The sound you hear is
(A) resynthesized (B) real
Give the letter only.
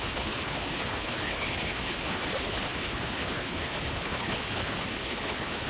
A